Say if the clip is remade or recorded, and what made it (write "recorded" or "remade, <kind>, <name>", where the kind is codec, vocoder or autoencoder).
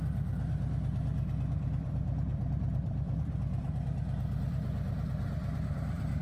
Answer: remade, vocoder, BigVGAN v2